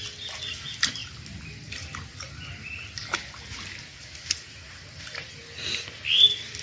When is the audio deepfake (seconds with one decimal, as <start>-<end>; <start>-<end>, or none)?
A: none